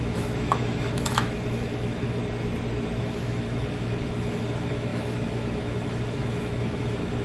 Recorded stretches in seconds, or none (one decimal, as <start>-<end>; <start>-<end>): 2.2-3.0